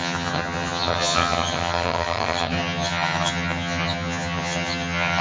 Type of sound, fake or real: fake